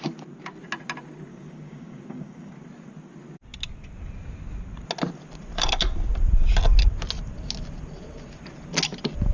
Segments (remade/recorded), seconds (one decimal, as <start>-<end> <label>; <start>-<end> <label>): 0.0-1.3 recorded; 1.3-2.5 remade; 2.5-9.3 recorded